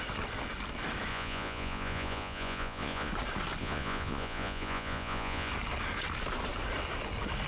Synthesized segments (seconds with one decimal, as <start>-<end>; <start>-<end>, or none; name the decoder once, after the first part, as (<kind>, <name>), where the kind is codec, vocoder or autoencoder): 1.1-3.1 (vocoder, Vocos); 3.6-5.5